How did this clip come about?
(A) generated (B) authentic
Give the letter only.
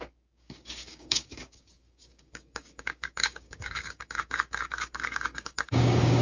A